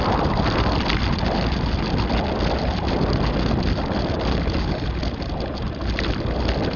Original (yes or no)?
yes